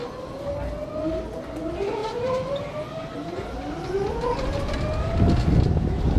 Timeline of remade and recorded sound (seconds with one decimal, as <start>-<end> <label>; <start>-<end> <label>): 0.0-6.2 recorded